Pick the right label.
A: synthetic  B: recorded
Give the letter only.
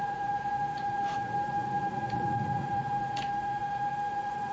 A